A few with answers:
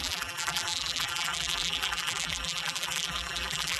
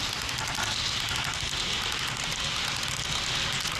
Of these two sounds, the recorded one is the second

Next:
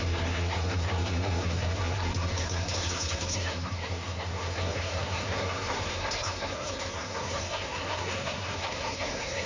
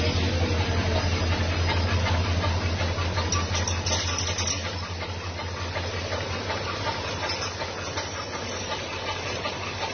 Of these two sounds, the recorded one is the second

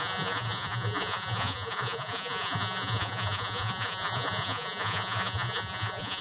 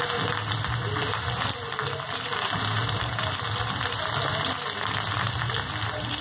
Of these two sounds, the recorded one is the second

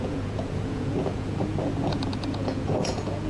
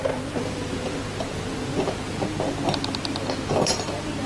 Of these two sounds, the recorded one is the second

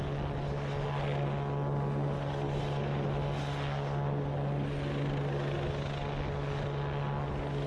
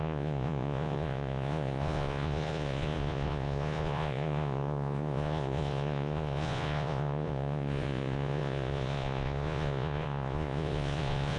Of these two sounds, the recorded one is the first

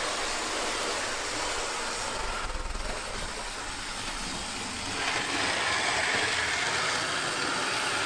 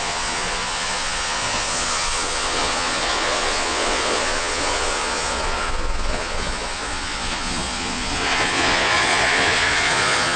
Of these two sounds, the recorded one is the first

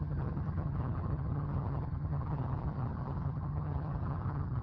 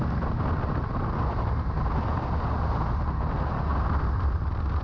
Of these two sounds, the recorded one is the second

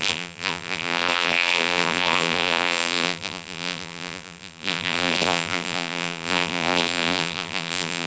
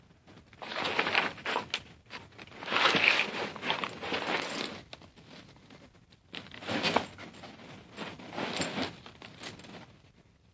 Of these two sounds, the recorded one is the second